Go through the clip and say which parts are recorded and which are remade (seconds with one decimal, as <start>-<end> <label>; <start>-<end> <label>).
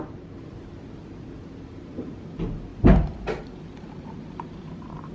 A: 0.0-2.7 remade; 2.7-3.9 recorded; 3.9-5.1 remade